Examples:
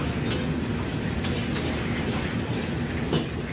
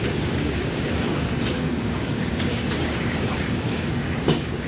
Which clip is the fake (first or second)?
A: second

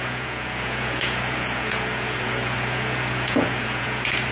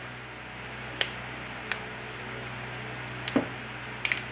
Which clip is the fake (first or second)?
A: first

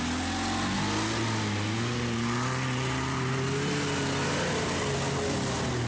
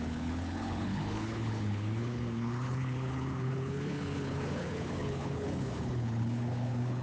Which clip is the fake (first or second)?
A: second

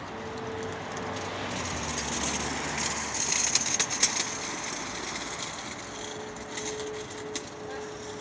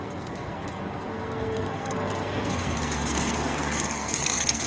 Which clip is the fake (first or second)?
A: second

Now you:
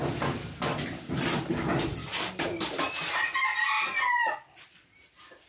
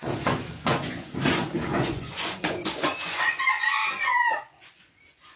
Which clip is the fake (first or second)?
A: second